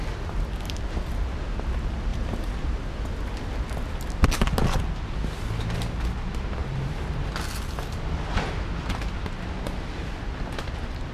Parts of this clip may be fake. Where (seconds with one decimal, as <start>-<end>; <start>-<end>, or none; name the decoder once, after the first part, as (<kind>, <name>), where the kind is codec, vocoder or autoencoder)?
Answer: 2.1-3.1 (vocoder, BigVGAN v2); 6.6-7.3